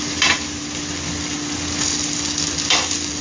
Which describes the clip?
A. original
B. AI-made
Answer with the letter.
A